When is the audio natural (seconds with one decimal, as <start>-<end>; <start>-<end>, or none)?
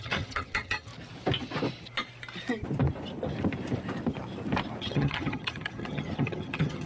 0.9-4.8